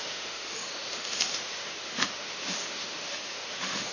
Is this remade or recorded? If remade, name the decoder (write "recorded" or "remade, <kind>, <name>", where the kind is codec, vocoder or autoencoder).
remade, autoencoder, DAC-VAE